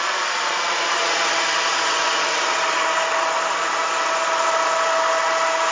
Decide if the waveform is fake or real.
real